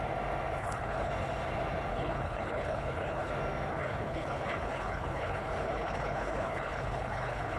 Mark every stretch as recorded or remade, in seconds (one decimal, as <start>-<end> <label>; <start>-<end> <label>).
0.0-0.6 recorded; 0.6-1.1 remade; 1.1-1.9 recorded; 1.9-3.3 remade; 3.3-3.7 recorded; 3.7-7.6 remade

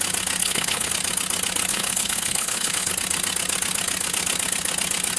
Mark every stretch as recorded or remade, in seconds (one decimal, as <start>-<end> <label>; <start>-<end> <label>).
0.0-0.4 recorded; 0.4-0.9 remade; 0.9-1.7 recorded; 1.7-2.9 remade; 2.9-5.2 recorded

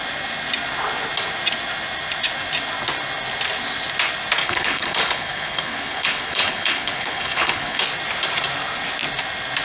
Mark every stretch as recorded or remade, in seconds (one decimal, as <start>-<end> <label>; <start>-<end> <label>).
0.0-4.4 recorded; 4.4-7.8 remade; 7.8-9.6 recorded

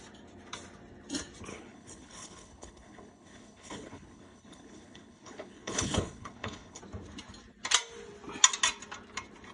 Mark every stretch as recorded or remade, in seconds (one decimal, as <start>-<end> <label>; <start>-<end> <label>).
0.0-1.5 recorded; 1.5-6.8 remade; 6.8-9.5 recorded

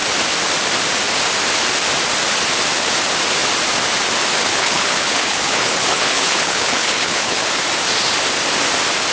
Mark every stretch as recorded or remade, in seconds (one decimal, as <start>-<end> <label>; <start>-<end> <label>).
0.0-4.5 recorded; 4.5-7.6 remade; 7.6-9.1 recorded

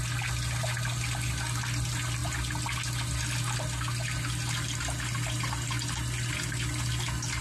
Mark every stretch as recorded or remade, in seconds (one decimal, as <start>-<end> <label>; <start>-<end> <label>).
0.0-7.4 recorded

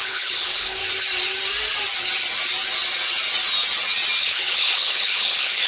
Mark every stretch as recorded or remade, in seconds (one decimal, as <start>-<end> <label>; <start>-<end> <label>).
0.0-0.8 remade; 0.8-4.2 recorded; 4.2-5.7 remade